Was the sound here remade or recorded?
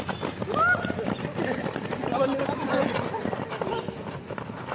recorded